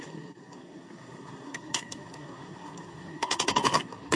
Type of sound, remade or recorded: remade